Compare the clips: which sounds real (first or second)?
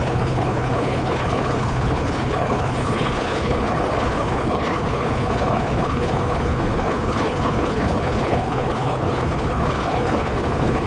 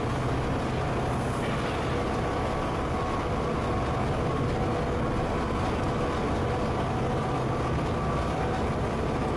second